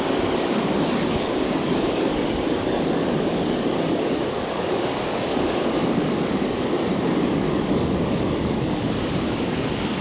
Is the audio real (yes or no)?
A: no